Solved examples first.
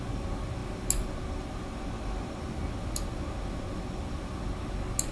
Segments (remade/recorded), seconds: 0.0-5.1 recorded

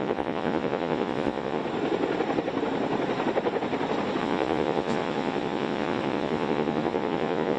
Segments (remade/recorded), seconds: 0.0-1.6 remade; 1.6-4.2 recorded; 4.2-7.6 remade